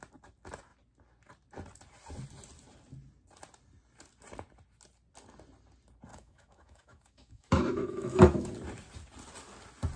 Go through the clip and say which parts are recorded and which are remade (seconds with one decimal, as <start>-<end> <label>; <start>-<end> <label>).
0.0-6.1 recorded; 6.1-8.5 remade; 8.5-10.0 recorded